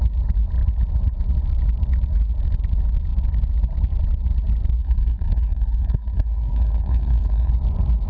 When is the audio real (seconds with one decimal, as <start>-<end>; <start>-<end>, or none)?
0.0-4.8; 7.5-8.1